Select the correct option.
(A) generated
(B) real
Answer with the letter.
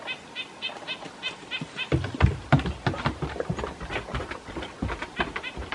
B